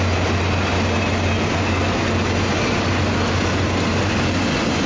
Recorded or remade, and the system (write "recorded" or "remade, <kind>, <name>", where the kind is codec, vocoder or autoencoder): recorded